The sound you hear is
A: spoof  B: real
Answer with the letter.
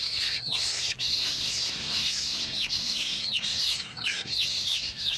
A